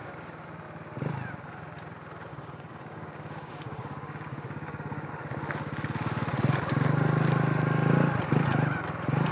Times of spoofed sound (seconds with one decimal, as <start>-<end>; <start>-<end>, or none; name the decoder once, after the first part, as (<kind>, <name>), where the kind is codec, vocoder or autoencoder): 2.3-5.1 (codec, DAC)